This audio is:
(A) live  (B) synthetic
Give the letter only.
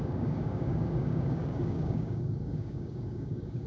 B